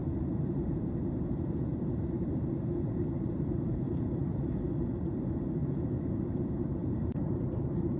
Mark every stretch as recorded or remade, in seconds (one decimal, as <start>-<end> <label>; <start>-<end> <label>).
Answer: 0.0-4.2 remade; 4.2-4.9 recorded; 4.9-5.6 remade; 5.6-6.2 recorded; 6.2-8.0 remade